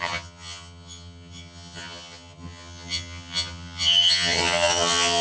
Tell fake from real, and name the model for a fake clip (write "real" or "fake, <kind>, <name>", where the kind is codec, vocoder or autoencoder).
fake, vocoder, HiFi-GAN